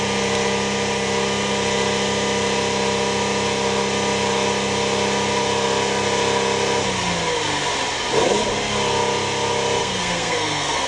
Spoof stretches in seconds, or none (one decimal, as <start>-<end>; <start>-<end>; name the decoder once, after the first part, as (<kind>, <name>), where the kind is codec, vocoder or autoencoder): 9.8-10.9 (codec, SNAC)